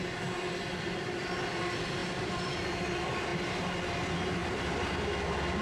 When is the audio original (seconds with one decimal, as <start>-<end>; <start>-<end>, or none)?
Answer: 0.0-2.0; 2.8-4.4; 4.9-5.6